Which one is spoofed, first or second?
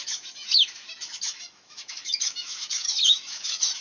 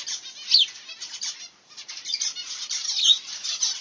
first